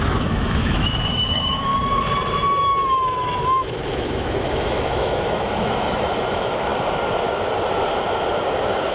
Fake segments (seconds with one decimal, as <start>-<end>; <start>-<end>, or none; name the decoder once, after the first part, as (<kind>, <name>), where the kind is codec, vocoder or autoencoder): 0.0-1.7 (autoencoder, DAC-VAE); 2.3-6.7